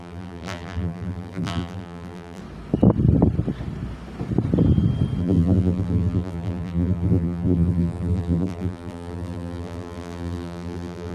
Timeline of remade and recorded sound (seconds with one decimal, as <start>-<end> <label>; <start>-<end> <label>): 0.0-2.4 remade; 2.4-5.2 recorded; 5.2-11.1 remade